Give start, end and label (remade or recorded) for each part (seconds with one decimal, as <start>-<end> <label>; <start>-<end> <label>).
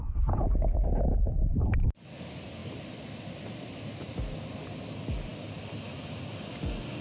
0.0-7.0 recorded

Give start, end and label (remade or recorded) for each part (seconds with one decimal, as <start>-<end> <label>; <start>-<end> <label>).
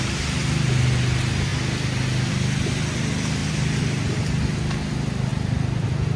0.0-3.4 recorded; 3.4-4.2 remade; 4.2-5.3 recorded; 5.3-6.2 remade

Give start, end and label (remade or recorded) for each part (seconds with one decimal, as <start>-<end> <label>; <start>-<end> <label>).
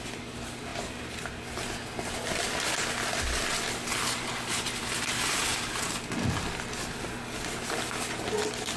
0.0-0.7 recorded; 0.7-1.4 remade; 1.4-8.8 recorded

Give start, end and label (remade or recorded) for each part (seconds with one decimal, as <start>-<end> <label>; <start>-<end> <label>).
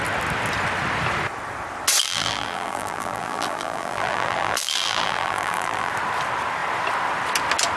0.0-2.0 recorded; 2.0-5.9 remade; 5.9-7.8 recorded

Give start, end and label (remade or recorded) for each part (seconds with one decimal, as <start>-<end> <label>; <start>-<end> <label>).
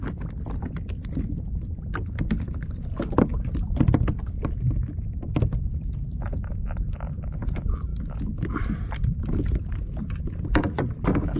0.0-3.3 recorded; 3.3-3.8 remade; 3.8-11.4 recorded